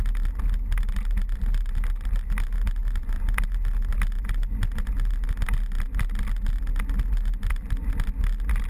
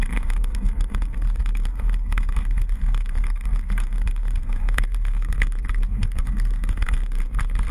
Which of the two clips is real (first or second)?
first